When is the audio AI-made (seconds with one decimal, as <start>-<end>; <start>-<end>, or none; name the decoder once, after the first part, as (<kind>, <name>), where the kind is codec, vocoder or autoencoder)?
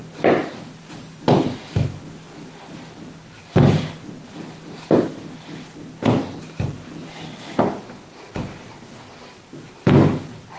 none